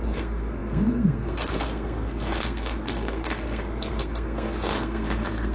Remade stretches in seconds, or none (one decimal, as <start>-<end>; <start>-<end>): 0.0-5.5